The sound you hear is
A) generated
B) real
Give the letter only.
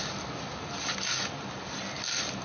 B